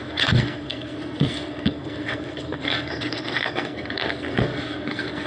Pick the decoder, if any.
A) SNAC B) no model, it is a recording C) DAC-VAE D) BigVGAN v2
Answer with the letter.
A